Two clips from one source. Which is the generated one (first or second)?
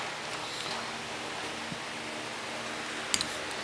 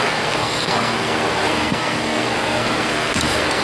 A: second